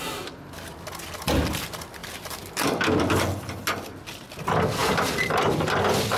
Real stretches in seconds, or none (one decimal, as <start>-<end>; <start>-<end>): 0.0-2.0; 3.1-4.8; 5.8-6.2